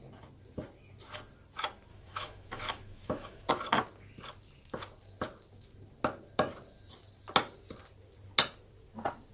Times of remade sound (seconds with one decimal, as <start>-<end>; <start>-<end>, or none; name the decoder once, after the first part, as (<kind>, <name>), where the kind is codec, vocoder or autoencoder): 1.9-3.5 (autoencoder, DAC-VAE)